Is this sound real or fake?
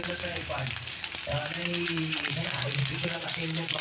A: fake